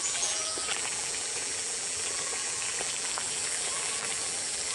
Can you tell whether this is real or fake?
fake